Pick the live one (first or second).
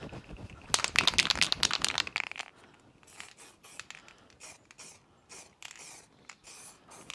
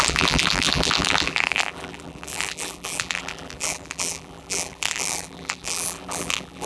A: first